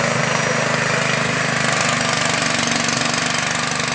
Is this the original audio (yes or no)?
yes